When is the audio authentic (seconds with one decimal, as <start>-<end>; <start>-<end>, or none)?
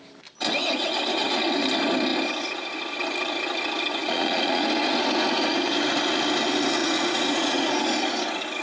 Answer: 0.0-3.9; 4.6-6.8; 7.6-8.6